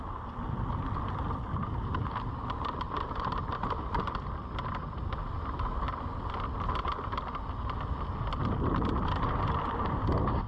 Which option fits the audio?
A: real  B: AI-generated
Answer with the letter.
A